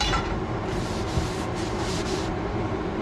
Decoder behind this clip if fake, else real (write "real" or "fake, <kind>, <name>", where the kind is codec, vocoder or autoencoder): fake, vocoder, BigVGAN v2